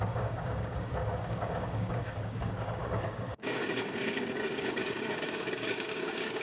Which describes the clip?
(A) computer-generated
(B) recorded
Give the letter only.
A